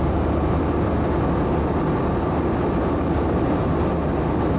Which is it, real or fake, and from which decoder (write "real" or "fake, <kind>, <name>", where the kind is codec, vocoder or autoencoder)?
real